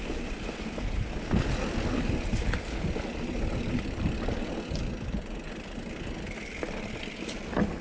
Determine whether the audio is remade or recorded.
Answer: recorded